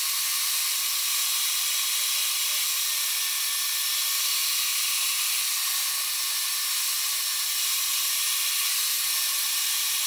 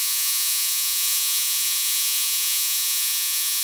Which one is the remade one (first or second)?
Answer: second